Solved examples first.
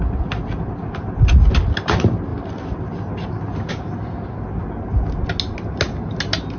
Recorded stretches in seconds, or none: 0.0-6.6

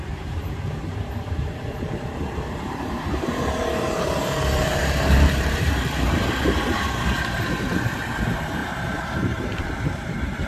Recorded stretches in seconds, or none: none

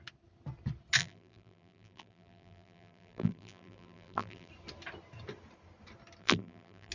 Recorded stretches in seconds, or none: 0.0-1.0; 4.5-6.2

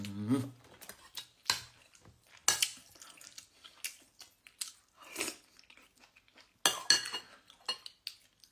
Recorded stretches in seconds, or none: 0.0-8.5

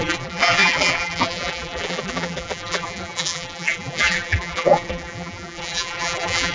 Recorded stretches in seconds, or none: none

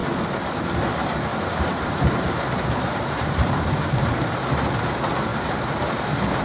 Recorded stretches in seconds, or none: 0.0-1.3; 4.8-5.3; 5.8-6.4

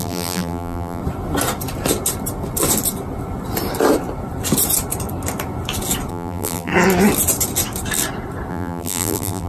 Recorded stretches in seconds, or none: 1.0-6.1; 6.7-8.5